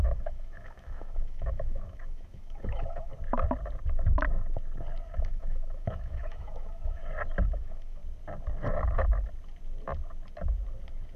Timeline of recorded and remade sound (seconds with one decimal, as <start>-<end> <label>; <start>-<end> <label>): 0.0-3.1 remade; 3.1-5.1 recorded; 5.1-7.0 remade; 7.0-7.5 recorded; 7.5-8.0 remade; 8.0-11.2 recorded